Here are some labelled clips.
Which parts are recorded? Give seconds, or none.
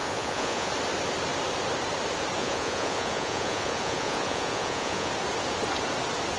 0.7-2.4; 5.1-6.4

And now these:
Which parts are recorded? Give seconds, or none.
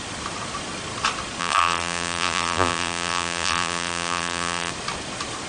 0.0-1.4; 4.7-5.5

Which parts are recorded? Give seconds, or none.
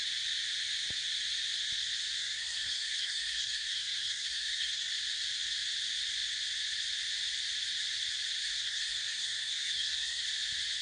0.0-2.2; 4.9-8.4; 10.2-10.8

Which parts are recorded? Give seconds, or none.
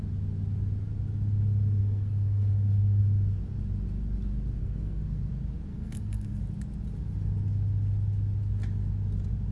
0.0-1.8; 3.0-4.6; 5.3-5.7; 6.4-9.5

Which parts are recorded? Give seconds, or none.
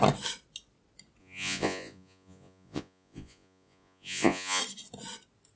0.0-1.2; 4.6-5.6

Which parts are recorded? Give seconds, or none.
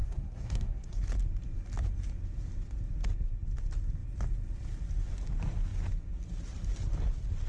1.0-7.5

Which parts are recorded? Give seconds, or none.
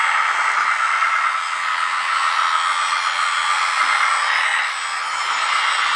0.0-6.0